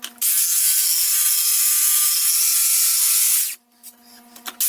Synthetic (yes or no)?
no